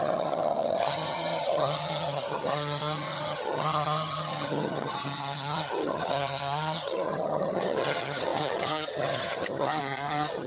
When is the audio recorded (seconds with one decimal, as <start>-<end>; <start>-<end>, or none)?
none